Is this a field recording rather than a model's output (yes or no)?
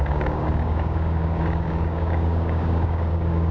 no